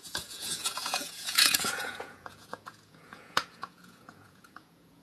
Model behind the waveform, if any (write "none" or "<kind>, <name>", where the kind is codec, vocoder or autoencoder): vocoder, Vocos